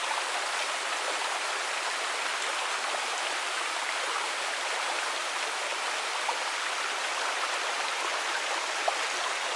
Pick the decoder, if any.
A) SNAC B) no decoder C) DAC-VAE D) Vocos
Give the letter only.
B